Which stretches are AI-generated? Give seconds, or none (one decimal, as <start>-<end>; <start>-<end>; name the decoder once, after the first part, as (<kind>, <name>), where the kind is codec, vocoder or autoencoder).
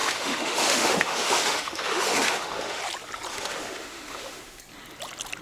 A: 0.0-2.8 (autoencoder, DAC-VAE); 3.3-4.6